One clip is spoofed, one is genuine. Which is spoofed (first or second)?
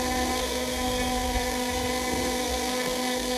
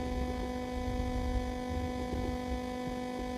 first